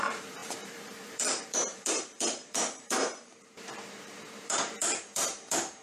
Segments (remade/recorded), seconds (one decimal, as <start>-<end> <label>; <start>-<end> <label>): 0.0-5.8 remade